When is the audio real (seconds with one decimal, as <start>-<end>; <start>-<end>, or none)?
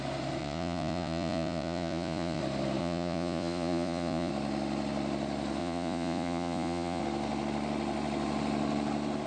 0.0-0.4; 2.4-2.8; 4.3-5.6; 7.0-9.3